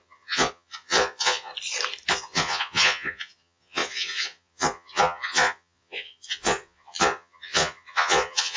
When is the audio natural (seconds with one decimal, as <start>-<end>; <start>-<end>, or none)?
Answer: 1.5-2.1